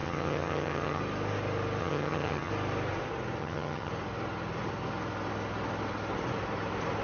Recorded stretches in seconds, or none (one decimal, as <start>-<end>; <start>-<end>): 1.0-1.8; 2.5-3.4; 3.9-7.0